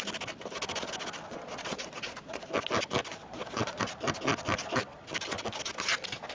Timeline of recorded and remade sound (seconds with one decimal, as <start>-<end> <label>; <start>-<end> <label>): 0.0-1.3 recorded; 1.3-2.4 remade; 2.4-3.2 recorded; 3.2-3.8 remade; 3.8-6.3 recorded

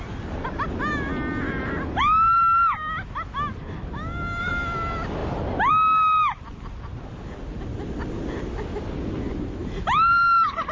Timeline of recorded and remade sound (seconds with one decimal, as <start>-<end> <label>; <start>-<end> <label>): 0.0-9.6 recorded; 9.6-10.7 remade

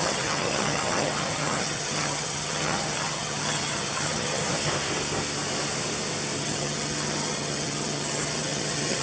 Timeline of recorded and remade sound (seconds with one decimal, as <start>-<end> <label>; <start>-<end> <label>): 0.0-4.4 remade; 4.4-6.4 recorded; 6.4-9.0 remade

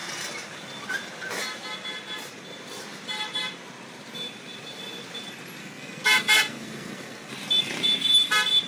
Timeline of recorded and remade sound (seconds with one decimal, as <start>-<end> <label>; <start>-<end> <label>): 0.0-5.6 recorded; 5.6-7.3 remade; 7.3-8.7 recorded

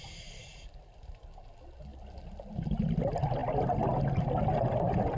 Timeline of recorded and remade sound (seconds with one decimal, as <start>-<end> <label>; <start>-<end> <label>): 0.0-5.2 recorded

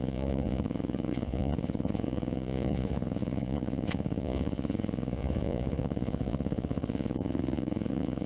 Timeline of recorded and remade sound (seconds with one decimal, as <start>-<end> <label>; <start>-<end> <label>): 0.0-8.3 remade